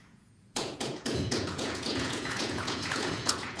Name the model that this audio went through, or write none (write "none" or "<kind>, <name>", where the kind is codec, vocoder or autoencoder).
vocoder, Vocos